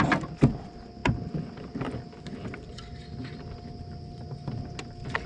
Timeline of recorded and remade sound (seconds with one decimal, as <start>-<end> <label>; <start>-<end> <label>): 0.0-5.3 recorded